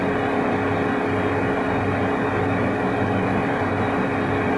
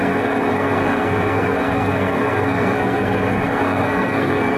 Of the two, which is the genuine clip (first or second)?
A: first